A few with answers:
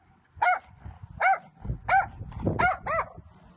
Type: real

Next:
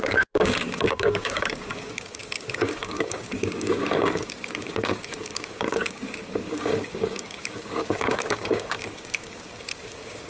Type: fake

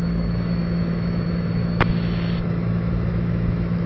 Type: fake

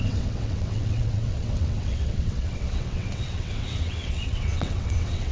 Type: fake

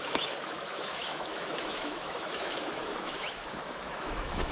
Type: fake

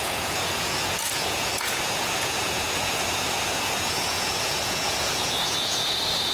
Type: fake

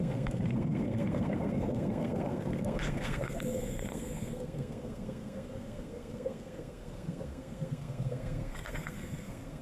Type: fake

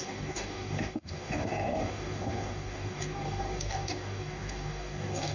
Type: fake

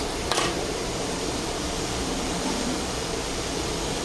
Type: fake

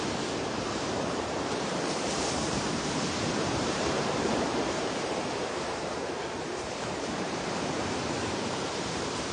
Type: fake